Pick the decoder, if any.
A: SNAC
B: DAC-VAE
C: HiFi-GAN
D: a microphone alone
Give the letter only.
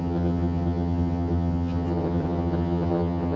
C